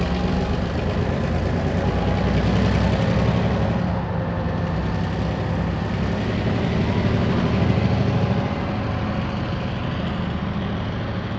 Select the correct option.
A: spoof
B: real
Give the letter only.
B